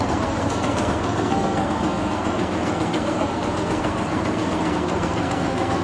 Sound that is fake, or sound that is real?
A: fake